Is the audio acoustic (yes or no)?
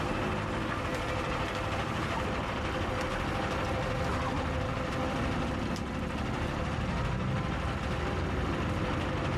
yes